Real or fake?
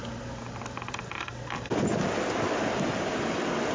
real